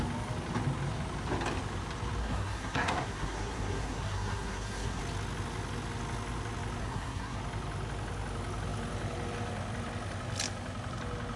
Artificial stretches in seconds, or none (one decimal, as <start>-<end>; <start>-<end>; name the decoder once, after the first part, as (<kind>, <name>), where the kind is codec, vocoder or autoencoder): 2.2-5.0 (codec, SNAC); 6.8-7.4